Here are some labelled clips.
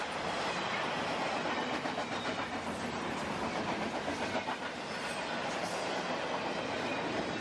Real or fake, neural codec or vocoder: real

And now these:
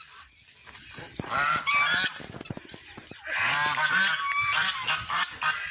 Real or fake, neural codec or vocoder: real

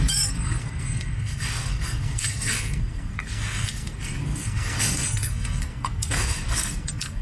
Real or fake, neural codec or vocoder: fake, codec, SNAC